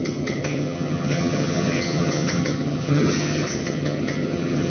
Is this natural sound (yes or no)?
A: no